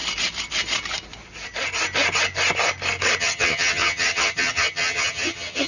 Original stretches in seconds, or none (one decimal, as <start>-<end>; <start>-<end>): 0.0-3.2